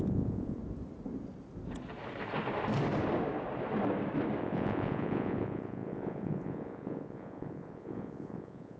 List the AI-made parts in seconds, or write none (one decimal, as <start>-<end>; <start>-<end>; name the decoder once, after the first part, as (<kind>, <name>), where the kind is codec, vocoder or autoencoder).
0.0-0.6 (vocoder, Vocos); 4.4-8.8